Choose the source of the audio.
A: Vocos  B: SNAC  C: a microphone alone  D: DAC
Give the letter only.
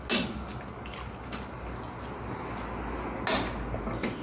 C